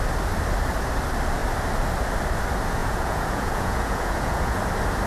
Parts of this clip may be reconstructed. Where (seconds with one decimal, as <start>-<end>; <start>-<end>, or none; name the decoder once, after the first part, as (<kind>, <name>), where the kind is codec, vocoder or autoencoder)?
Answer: 2.8-4.6 (vocoder, Vocos)

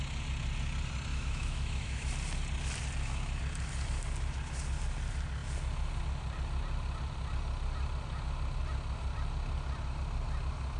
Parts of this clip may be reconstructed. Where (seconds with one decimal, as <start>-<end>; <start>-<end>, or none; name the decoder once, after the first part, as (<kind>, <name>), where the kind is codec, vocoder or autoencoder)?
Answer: 1.1-2.1 (autoencoder, DAC-VAE)

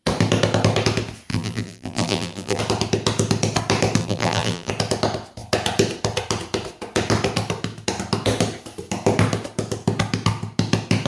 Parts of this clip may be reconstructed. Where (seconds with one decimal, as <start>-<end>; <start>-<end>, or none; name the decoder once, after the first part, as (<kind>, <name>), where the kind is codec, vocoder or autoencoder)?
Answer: 1.3-2.6 (vocoder, BigVGAN v2); 4.0-4.7